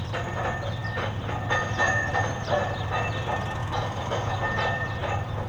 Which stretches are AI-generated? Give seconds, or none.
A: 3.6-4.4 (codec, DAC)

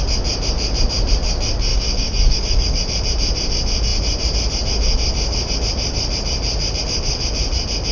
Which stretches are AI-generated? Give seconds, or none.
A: 1.7-2.8 (codec, DAC)